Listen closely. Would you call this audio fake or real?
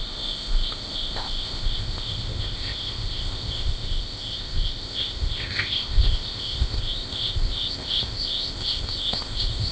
fake